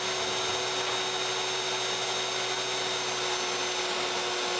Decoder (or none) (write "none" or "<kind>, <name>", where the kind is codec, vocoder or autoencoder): none